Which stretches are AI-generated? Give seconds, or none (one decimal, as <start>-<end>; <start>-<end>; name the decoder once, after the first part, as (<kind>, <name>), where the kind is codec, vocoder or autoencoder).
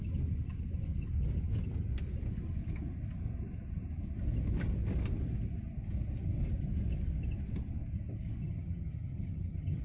8.4-9.8 (vocoder, HiFi-GAN)